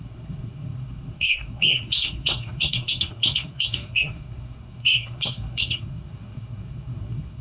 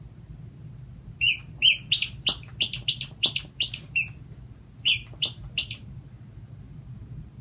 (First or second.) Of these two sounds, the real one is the second